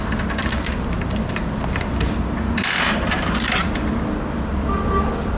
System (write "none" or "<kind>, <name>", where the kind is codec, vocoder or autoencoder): none